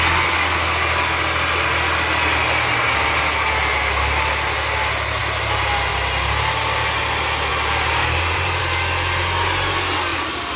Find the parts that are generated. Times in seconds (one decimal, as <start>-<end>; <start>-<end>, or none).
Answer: 7.5-8.6